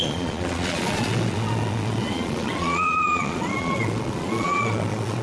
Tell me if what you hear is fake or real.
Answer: fake